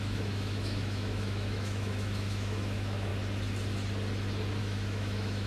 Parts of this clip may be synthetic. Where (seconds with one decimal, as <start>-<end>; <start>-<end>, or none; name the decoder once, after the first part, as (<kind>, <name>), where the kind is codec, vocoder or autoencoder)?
0.0-3.1 (autoencoder, DAC-VAE); 4.6-5.5